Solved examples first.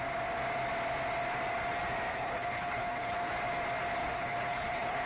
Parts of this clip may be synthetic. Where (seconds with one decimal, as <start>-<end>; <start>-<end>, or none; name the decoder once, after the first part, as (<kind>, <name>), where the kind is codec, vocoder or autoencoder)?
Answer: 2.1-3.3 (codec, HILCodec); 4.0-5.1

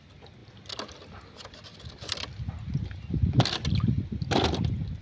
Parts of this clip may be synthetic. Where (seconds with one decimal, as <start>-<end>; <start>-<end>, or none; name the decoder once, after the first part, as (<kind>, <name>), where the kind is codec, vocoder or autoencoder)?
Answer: none

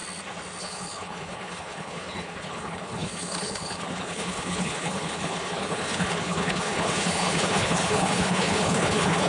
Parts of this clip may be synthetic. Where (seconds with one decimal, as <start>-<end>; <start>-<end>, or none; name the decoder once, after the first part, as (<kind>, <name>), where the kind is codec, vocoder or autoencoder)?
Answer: 0.6-9.3 (codec, HILCodec)

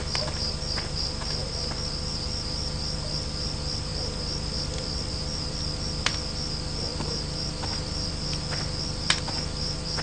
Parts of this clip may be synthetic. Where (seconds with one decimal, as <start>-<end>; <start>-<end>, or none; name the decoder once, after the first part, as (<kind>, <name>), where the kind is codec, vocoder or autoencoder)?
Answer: 0.0-1.4 (vocoder, BigVGAN v2); 2.1-3.9; 5.1-10.0

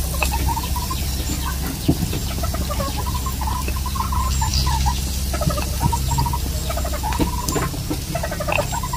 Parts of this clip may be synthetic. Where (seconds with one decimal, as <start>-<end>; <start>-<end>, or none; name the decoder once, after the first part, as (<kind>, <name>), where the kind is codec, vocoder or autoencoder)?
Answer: none

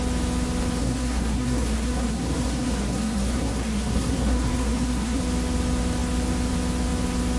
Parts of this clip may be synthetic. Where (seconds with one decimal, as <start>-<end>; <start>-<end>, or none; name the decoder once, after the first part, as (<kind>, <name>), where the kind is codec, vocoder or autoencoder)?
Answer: 0.8-5.2 (codec, SNAC)